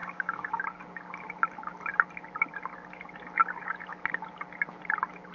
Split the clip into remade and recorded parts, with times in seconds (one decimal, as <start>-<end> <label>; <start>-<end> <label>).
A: 0.0-0.6 remade; 0.6-5.3 recorded